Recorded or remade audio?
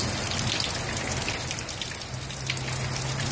recorded